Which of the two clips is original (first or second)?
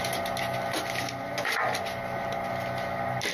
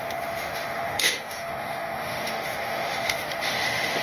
first